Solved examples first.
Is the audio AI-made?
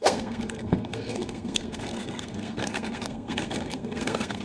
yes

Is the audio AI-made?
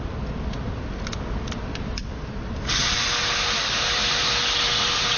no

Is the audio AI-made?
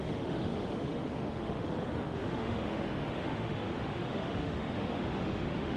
yes